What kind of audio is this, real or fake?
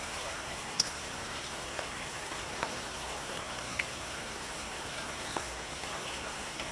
fake